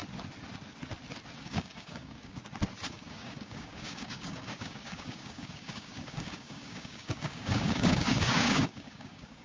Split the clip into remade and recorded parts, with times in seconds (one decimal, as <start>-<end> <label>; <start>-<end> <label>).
0.0-1.4 recorded; 1.4-2.4 remade; 2.4-2.9 recorded; 2.9-9.4 remade